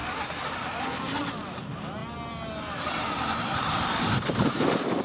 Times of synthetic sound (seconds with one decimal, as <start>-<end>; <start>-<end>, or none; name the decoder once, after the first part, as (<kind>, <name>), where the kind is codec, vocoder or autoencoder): 1.3-2.0 (vocoder, BigVGAN v2); 2.7-5.0